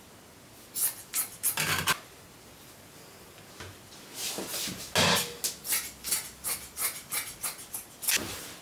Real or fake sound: real